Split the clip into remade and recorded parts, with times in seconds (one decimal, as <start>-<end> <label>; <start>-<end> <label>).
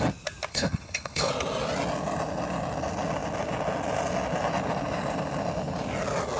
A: 0.0-0.5 recorded; 0.5-1.3 remade; 1.3-6.4 recorded